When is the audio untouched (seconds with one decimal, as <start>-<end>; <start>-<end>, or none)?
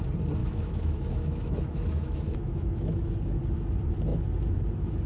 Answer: 0.0-0.4; 3.1-5.1